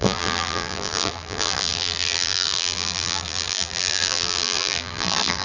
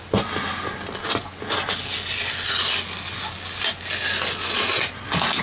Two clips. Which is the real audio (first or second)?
second